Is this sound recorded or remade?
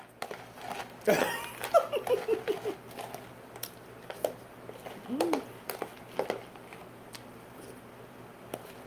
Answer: recorded